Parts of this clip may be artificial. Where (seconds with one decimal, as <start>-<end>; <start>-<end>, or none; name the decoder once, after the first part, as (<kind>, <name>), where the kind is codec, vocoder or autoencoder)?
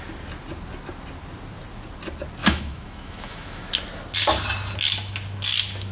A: 2.4-3.7 (autoencoder, DAC-VAE)